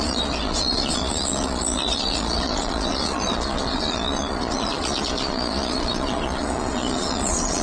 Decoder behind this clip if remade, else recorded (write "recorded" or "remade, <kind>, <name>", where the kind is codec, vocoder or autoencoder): remade, vocoder, Vocos